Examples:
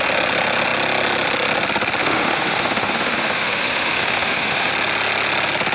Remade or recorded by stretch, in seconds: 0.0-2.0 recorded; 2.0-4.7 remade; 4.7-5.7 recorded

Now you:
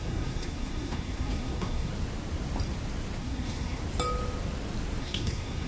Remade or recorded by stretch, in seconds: 0.0-1.9 remade; 1.9-3.2 recorded; 3.2-3.8 remade; 3.8-5.0 recorded; 5.0-5.7 remade

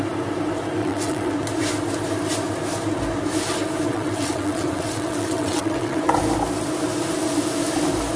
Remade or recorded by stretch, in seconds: 0.0-0.8 recorded; 0.8-1.3 remade; 1.3-3.9 recorded; 3.9-6.0 remade; 6.0-8.2 recorded

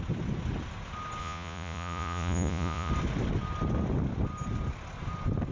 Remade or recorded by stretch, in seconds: 0.0-1.2 recorded; 1.2-2.9 remade; 2.9-5.5 recorded

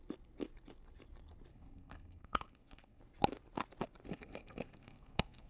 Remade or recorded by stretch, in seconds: 0.0-1.5 recorded; 1.5-3.0 remade; 3.0-4.1 recorded; 4.1-5.5 remade

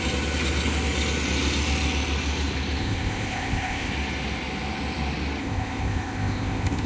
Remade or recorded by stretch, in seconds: 0.0-2.8 recorded; 2.8-3.9 remade; 3.9-5.4 recorded; 5.4-6.9 remade

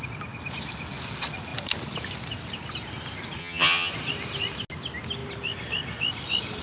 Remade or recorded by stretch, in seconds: 0.0-3.4 recorded; 3.4-3.9 remade; 3.9-6.6 recorded